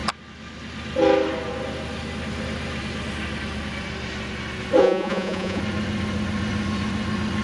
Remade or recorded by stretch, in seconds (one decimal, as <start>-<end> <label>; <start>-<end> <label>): 0.0-4.8 recorded; 4.8-5.6 remade; 5.6-7.4 recorded

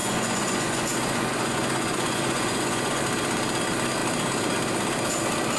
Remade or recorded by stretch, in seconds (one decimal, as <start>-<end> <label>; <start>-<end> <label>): 0.0-3.0 remade; 3.0-5.6 recorded

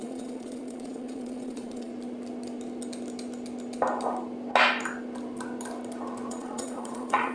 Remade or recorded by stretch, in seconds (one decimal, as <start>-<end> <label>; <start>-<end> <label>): 0.0-1.9 remade; 1.9-6.3 recorded; 6.3-7.3 remade